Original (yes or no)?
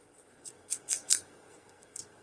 no